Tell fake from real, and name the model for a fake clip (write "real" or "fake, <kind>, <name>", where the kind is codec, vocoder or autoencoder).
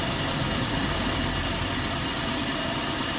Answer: fake, vocoder, BigVGAN v2